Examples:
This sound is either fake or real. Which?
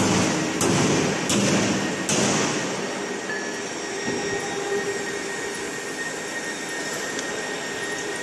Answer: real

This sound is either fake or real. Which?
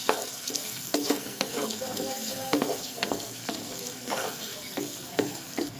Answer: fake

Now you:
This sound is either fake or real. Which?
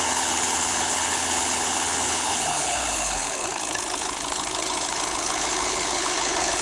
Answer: fake